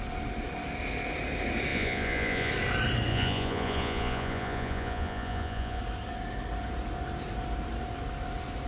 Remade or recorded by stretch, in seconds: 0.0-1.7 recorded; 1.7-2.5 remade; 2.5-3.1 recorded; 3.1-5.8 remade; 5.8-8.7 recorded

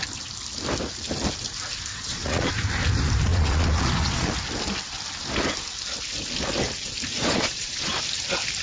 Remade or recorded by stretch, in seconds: 0.0-1.9 recorded; 1.9-2.5 remade; 2.5-3.3 recorded; 3.3-4.3 remade; 4.3-7.1 recorded; 7.1-7.9 remade; 7.9-8.6 recorded

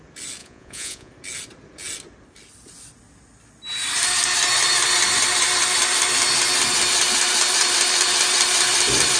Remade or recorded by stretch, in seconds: 0.0-0.4 recorded; 0.4-1.1 remade; 1.1-9.2 recorded